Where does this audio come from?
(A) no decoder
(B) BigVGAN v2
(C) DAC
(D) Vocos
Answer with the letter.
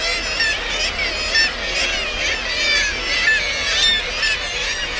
A